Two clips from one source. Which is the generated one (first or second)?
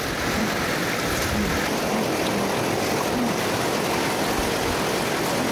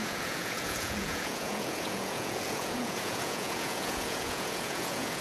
second